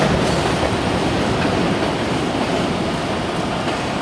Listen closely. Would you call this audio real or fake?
real